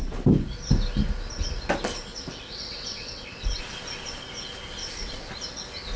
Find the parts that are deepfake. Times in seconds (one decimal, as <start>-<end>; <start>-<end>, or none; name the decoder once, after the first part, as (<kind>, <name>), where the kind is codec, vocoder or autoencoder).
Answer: 2.1-3.6 (vocoder, WaveNeXt); 4.8-5.3